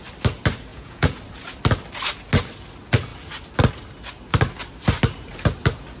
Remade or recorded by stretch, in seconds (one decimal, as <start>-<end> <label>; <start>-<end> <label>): 0.0-0.7 recorded; 0.7-1.2 remade; 1.2-6.0 recorded